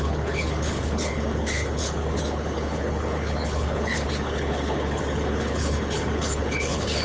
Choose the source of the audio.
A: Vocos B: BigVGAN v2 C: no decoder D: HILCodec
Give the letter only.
D